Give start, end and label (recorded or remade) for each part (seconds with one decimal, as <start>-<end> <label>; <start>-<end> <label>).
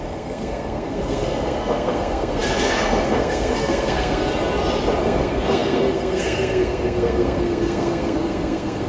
0.0-4.3 remade; 4.3-5.0 recorded; 5.0-8.9 remade